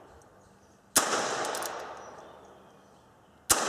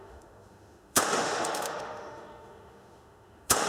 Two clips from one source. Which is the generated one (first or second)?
second